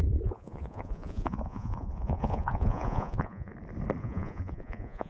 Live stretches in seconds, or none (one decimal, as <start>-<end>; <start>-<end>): 3.5-4.0